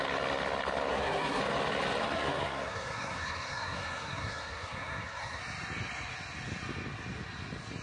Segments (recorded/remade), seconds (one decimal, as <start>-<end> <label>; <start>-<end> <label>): 0.0-0.9 recorded; 0.9-1.4 remade; 1.4-2.0 recorded; 2.0-5.4 remade; 5.4-7.8 recorded